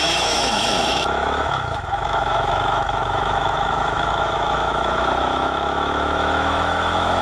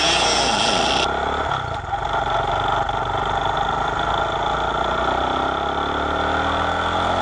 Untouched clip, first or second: second